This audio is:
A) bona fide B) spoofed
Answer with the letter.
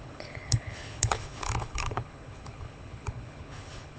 B